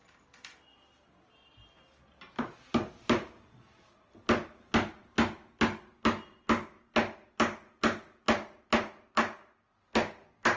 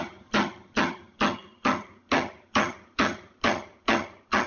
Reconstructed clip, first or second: second